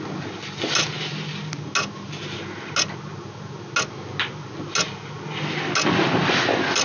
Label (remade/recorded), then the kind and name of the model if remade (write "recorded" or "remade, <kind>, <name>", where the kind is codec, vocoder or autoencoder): recorded